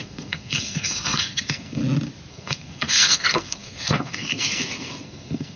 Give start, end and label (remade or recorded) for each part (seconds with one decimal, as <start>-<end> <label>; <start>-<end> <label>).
0.0-1.8 remade; 1.8-2.3 recorded; 2.3-5.6 remade

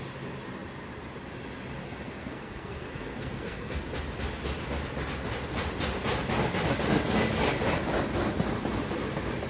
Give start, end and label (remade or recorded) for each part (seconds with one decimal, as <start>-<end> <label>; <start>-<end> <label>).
0.0-1.8 recorded; 1.8-3.9 remade; 3.9-9.5 recorded

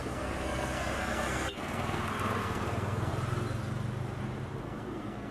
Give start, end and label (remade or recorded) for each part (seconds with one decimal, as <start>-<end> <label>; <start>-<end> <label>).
0.0-3.1 remade; 3.1-4.6 recorded; 4.6-5.3 remade

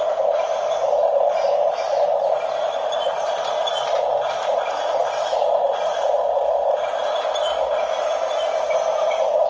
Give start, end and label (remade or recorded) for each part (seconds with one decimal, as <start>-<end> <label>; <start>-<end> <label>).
0.0-9.5 recorded

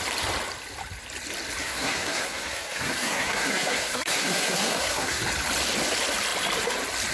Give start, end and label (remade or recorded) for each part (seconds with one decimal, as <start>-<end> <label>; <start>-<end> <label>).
0.0-1.6 recorded; 1.6-5.2 remade; 5.2-7.1 recorded